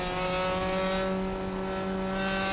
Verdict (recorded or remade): recorded